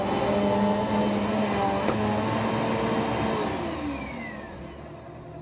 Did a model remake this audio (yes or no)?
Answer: no